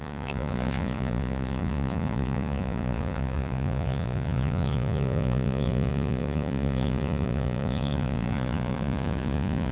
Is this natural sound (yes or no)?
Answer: no